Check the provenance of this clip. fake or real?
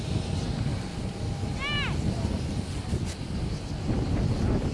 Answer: real